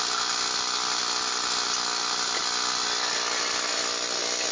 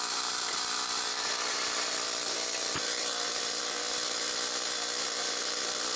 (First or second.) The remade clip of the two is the second